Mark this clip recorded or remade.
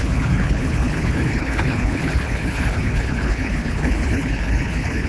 remade